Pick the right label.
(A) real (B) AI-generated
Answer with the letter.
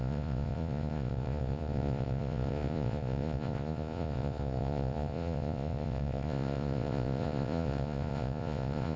B